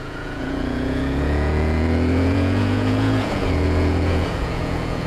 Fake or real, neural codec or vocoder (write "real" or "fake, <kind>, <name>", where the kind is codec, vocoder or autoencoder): fake, vocoder, Vocos